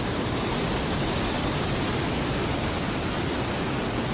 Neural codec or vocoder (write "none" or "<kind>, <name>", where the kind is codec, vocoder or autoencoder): none